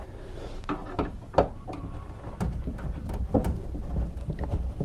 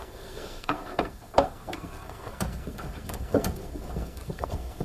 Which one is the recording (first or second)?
first